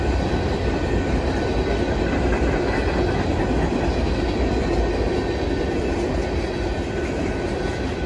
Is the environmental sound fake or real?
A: real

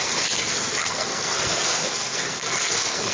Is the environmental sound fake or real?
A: fake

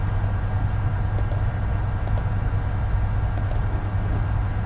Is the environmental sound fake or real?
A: real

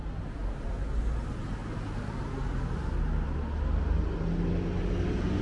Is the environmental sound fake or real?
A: real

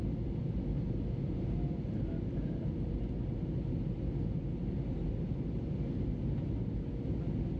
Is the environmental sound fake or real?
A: real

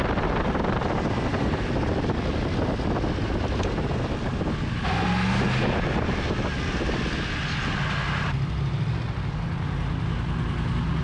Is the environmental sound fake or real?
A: real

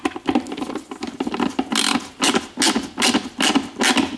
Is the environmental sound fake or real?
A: real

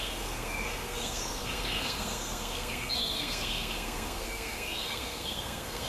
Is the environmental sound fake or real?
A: fake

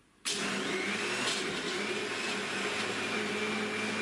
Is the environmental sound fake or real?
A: real